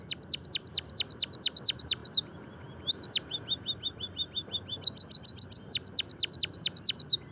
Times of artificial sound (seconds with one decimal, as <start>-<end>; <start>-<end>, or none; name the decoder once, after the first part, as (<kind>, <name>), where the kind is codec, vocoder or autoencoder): none